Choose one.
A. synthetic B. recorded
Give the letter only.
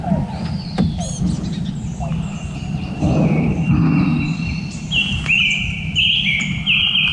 B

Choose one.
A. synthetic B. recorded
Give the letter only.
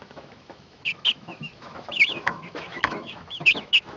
A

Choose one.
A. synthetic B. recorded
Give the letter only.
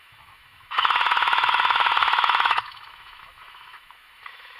A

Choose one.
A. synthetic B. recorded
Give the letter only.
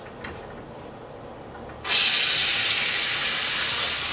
B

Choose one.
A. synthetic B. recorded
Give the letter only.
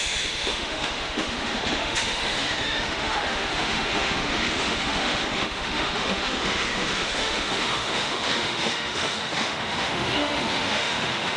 A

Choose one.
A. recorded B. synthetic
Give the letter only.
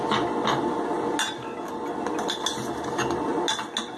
A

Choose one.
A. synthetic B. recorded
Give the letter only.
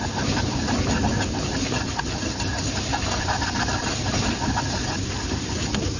B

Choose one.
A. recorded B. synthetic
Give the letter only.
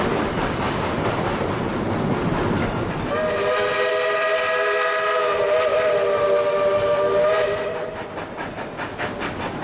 A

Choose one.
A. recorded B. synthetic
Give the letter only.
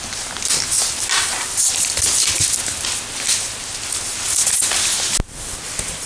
A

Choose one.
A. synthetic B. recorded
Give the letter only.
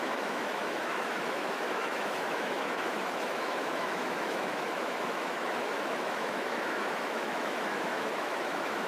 A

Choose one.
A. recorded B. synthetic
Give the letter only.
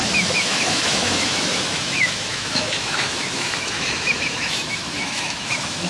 B